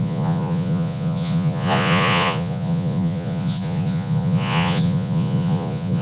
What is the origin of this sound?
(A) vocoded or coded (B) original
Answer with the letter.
A